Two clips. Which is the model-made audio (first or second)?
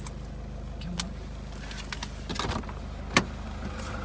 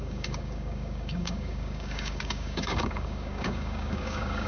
second